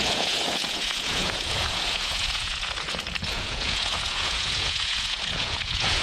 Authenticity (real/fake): fake